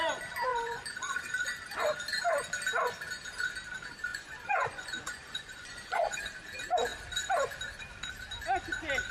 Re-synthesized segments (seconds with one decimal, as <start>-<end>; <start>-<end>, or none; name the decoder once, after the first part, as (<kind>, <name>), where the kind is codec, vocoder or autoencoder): 0.5-1.3 (vocoder, Vocos); 4.1-6.2